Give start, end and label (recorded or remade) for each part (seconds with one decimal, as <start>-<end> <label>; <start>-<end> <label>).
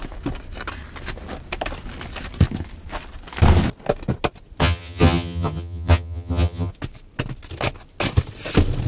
0.0-4.6 recorded; 4.6-6.7 remade; 6.7-8.9 recorded